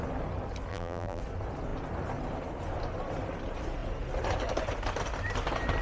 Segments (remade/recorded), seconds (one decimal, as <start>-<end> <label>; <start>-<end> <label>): 0.0-0.7 recorded; 0.7-1.2 remade; 1.2-5.8 recorded